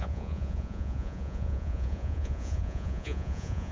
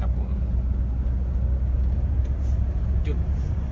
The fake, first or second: first